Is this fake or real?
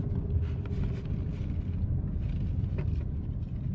real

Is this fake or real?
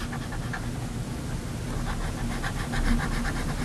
real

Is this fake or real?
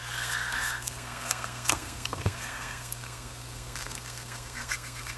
fake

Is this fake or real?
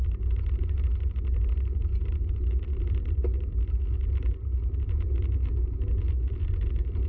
real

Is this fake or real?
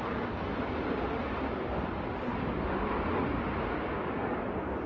real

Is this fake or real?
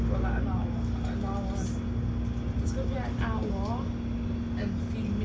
real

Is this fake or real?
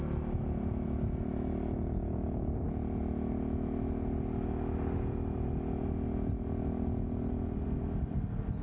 real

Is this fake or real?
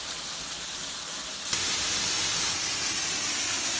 real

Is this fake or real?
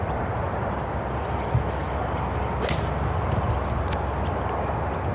real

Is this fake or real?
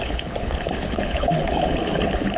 fake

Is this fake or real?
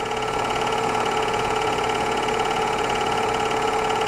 fake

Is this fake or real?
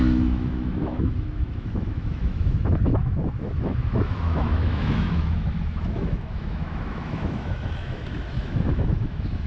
fake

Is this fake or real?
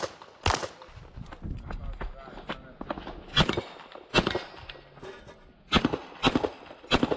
real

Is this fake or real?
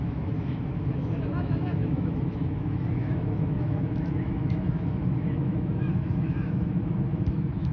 fake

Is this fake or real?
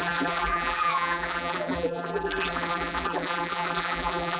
fake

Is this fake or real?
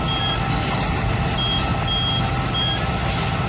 real